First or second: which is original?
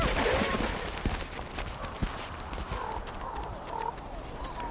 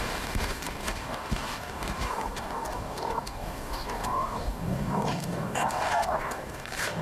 first